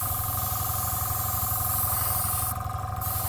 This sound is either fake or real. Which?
real